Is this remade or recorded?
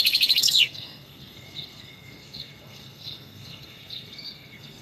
remade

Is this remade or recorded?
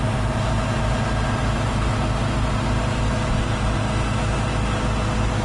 recorded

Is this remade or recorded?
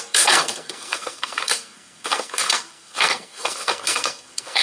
remade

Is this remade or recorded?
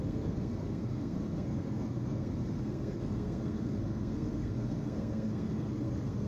remade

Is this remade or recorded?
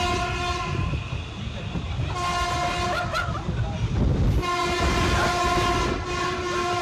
recorded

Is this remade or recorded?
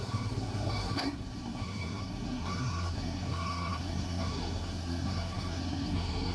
remade